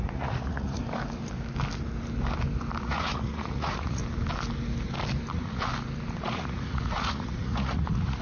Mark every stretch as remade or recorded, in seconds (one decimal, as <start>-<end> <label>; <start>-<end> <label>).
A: 0.0-0.8 remade; 0.8-2.8 recorded; 2.8-4.0 remade; 4.0-5.3 recorded; 5.3-5.7 remade; 5.7-6.2 recorded; 6.2-8.2 remade

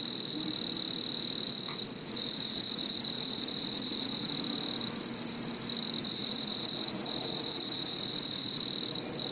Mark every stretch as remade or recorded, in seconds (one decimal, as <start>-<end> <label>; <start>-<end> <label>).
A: 0.0-1.7 recorded; 1.7-4.3 remade; 4.3-6.0 recorded; 6.0-8.6 remade; 8.6-9.3 recorded

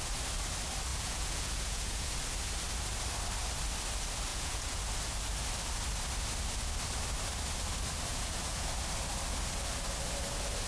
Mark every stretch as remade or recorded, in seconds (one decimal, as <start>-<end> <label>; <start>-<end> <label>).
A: 0.0-0.9 recorded; 0.9-2.1 remade; 2.1-4.3 recorded; 4.3-4.8 remade; 4.8-8.1 recorded; 8.1-8.7 remade; 8.7-10.7 recorded